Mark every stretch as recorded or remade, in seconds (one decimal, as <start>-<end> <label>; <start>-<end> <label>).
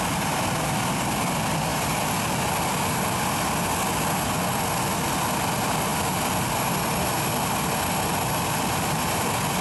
0.0-9.6 recorded